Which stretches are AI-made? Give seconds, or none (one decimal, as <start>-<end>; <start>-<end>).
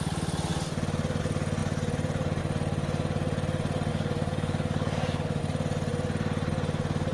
3.9-5.4